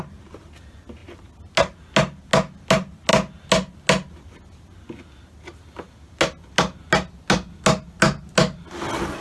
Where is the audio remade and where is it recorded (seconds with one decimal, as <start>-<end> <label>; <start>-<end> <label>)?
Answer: 0.0-9.2 recorded